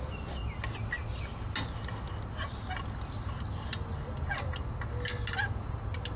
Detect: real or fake real